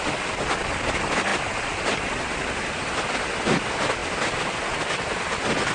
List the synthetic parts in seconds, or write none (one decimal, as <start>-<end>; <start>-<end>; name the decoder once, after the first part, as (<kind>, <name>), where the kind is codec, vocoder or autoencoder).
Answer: 1.3-3.1 (vocoder, BigVGAN v2)